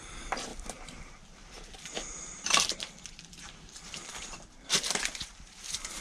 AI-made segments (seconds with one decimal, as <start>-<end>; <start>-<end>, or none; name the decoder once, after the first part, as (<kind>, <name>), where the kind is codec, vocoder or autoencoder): 0.0-6.0 (vocoder, BigVGAN v2)